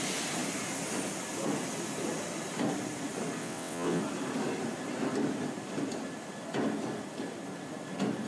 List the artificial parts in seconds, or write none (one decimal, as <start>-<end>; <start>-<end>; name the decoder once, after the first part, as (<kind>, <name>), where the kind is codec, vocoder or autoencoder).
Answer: 3.4-4.0 (vocoder, WaveNeXt)

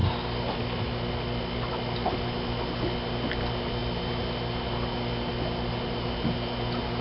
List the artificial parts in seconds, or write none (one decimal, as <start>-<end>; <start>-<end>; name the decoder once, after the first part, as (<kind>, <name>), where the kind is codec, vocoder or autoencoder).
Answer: none

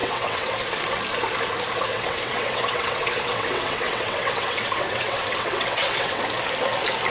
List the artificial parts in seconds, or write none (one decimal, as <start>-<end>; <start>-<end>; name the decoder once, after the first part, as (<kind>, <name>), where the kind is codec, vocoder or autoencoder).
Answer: 0.0-0.5 (vocoder, WaveNeXt); 1.9-6.2

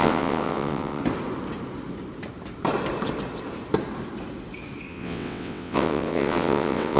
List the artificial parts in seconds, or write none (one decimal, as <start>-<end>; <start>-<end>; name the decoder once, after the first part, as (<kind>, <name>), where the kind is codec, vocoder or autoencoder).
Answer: 0.0-1.0 (vocoder, WaveNeXt); 4.9-7.0

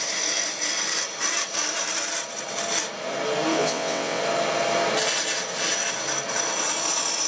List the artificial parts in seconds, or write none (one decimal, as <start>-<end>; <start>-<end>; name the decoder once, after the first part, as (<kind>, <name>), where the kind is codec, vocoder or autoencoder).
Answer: 3.5-4.2 (vocoder, WaveNeXt)

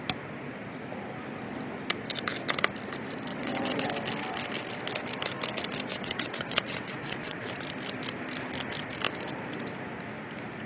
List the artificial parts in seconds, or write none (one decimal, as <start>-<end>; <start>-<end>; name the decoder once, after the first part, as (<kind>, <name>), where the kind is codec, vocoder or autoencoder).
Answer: 3.3-3.9 (vocoder, WaveNeXt); 5.9-7.5